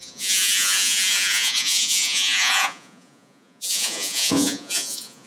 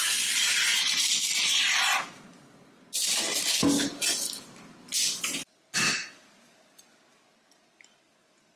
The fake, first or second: first